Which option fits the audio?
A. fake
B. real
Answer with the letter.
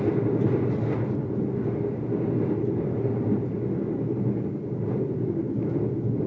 B